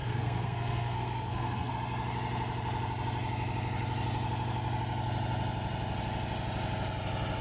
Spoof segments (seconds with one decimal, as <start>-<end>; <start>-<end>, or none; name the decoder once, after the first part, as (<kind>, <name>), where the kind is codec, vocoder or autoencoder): 0.0-1.7 (codec, SNAC)